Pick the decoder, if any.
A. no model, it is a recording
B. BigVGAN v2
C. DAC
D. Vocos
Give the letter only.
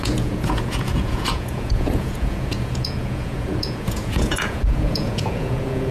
D